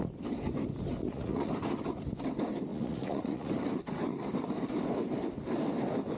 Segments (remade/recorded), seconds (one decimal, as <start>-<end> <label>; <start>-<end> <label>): 0.0-1.0 recorded; 1.0-1.5 remade; 1.5-2.7 recorded; 2.7-3.5 remade; 3.5-6.2 recorded